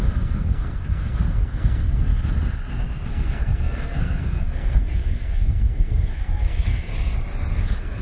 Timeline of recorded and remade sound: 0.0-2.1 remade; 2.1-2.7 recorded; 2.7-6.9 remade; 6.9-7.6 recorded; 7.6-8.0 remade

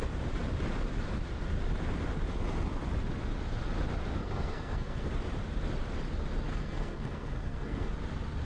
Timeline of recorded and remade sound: 0.0-4.2 recorded; 4.2-5.1 remade; 5.1-6.5 recorded; 6.5-7.9 remade; 7.9-8.5 recorded

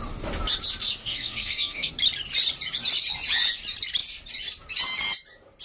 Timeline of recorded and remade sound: 0.0-1.0 recorded; 1.0-1.9 remade; 1.9-5.6 recorded